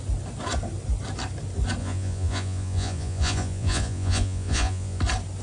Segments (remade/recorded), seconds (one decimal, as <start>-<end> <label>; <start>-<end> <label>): 0.0-1.8 recorded; 1.8-5.0 remade; 5.0-5.4 recorded